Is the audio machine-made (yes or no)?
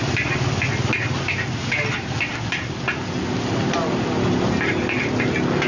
no